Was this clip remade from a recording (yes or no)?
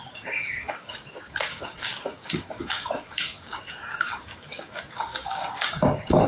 yes